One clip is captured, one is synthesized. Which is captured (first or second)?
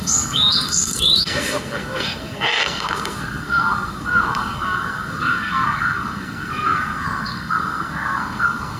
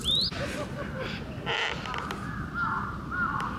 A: second